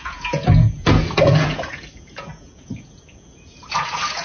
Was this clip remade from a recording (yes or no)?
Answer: yes